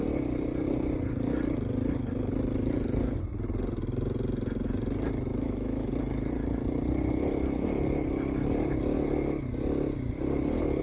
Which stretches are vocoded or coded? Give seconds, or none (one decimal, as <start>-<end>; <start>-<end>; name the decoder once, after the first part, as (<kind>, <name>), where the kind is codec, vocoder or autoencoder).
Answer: 5.3-5.9 (autoencoder, DAC-VAE)